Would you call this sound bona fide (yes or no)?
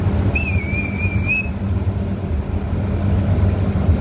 yes